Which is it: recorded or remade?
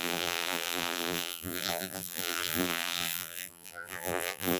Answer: remade